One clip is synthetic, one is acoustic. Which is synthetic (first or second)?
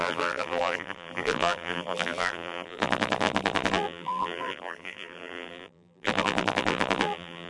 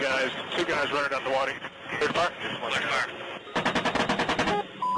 first